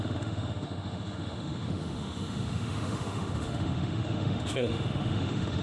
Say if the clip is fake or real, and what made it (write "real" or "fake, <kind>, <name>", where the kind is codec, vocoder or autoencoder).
fake, autoencoder, DAC-VAE